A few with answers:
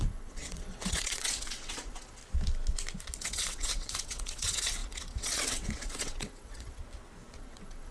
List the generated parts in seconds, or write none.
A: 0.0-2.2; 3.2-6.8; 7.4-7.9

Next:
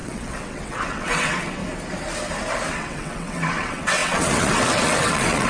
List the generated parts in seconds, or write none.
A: 0.0-1.6; 2.7-5.5

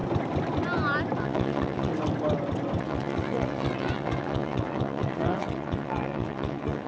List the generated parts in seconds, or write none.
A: 1.2-1.9; 2.8-6.9

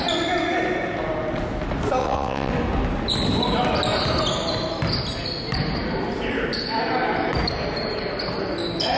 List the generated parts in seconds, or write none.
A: 2.0-2.5

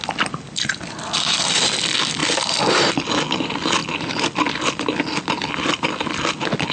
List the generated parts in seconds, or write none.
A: none

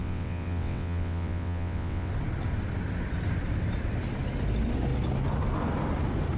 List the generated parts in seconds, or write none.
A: 0.0-2.1